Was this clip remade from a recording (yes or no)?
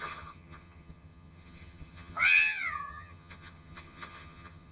yes